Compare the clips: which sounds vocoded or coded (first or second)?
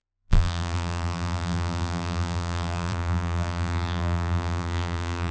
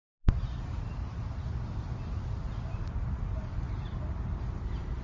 first